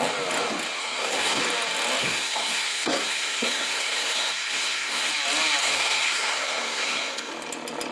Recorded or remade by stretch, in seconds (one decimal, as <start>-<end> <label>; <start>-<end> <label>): 0.0-0.8 recorded; 0.8-1.4 remade; 1.4-2.0 recorded; 2.0-5.1 remade; 5.1-5.6 recorded; 5.6-7.3 remade; 7.3-7.9 recorded